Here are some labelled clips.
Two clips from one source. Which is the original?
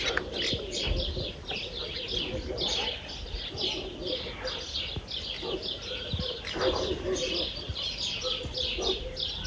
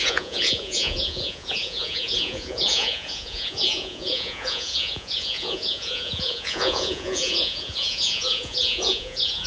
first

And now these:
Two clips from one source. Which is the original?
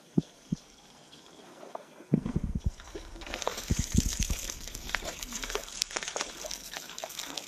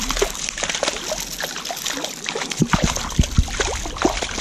second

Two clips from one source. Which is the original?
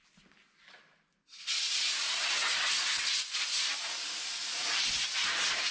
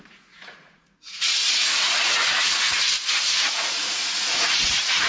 first